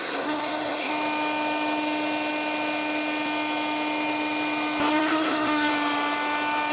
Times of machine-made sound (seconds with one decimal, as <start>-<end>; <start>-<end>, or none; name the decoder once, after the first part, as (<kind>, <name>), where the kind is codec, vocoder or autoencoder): 0.0-0.9 (codec, SNAC); 4.9-5.7